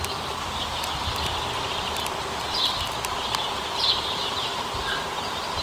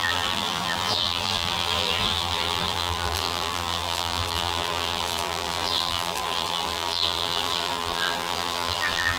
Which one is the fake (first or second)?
second